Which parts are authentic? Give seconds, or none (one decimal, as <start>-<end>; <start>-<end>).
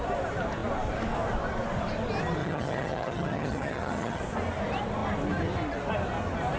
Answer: 0.0-2.4; 4.2-6.6